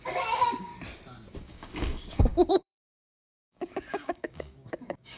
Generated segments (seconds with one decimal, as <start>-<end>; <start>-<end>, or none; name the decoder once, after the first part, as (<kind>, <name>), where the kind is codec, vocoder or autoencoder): 0.0-0.7 (codec, DAC); 1.4-5.2